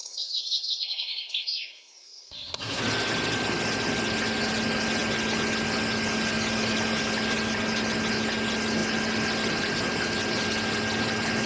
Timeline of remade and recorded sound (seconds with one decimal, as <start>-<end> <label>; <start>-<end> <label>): 0.0-2.8 remade; 2.8-11.5 recorded